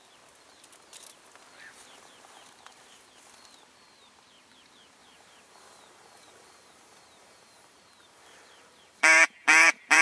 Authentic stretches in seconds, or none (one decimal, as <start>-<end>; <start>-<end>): 0.0-5.0